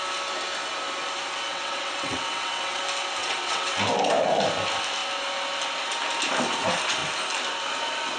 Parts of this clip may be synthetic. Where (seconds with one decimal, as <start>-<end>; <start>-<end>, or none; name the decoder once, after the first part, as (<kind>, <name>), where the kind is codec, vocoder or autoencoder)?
1.5-2.8 (vocoder, WaveNeXt); 3.2-3.8